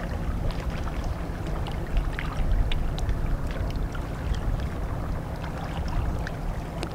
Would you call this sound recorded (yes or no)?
yes